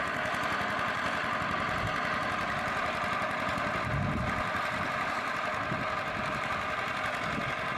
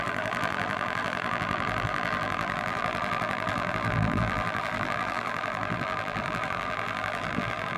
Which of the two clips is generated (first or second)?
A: second